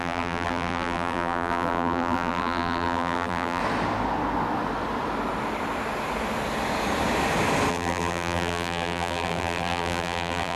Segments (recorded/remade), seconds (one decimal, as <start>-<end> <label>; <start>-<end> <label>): 0.0-3.6 remade; 3.6-7.7 recorded; 7.7-10.6 remade

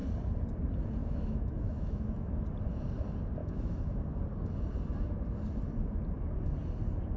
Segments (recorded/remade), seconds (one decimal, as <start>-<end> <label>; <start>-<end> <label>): 0.0-1.0 recorded; 1.0-2.4 remade; 2.4-3.4 recorded; 3.4-4.0 remade; 4.0-7.2 recorded

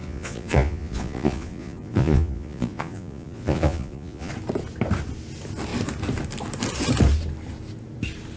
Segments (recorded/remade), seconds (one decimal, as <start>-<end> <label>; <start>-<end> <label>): 0.0-4.3 remade; 4.3-8.4 recorded

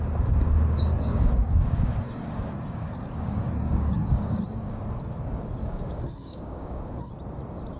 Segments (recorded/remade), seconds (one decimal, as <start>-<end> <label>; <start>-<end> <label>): 0.0-0.9 recorded; 0.9-4.8 remade; 4.8-5.6 recorded; 5.6-7.1 remade; 7.1-7.8 recorded

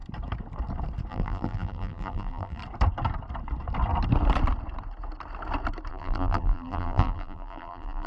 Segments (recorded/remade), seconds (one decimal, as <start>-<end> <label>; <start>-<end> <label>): 0.0-1.1 recorded; 1.1-2.6 remade; 2.6-5.9 recorded; 5.9-8.1 remade

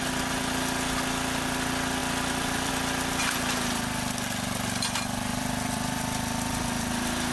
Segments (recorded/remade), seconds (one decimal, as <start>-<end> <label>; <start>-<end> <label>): 0.0-2.0 recorded; 2.0-2.7 remade; 2.7-5.3 recorded; 5.3-7.3 remade

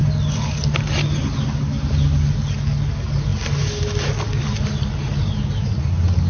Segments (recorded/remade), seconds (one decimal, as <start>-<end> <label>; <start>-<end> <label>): 0.0-6.3 recorded